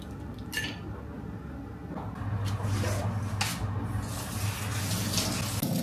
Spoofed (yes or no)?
no